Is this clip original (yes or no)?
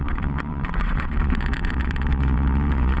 no